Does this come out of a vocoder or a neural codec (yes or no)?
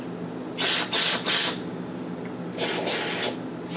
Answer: no